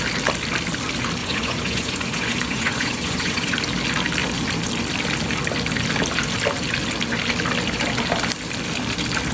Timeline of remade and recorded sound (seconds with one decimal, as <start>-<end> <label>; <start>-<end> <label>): 0.0-1.2 recorded; 1.2-3.6 remade; 3.6-9.3 recorded